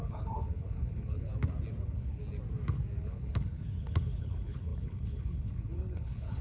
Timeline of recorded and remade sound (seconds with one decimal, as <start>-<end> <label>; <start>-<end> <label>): 0.0-1.3 remade; 1.3-1.8 recorded; 1.8-2.2 remade; 2.2-3.0 recorded; 3.0-6.4 remade